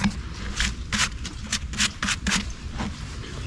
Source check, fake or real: real